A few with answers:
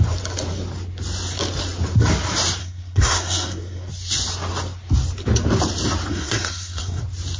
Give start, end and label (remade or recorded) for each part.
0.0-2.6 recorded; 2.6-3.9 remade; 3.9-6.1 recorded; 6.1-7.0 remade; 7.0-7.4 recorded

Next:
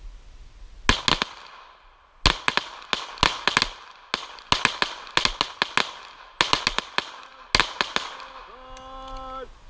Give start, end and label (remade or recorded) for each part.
0.0-9.7 recorded